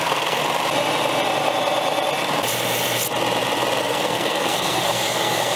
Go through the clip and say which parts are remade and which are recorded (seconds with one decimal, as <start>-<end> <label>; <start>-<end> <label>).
0.0-0.4 remade; 0.4-3.8 recorded; 3.8-5.6 remade